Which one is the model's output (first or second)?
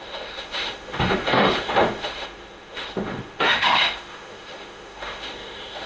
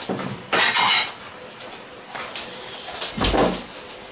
first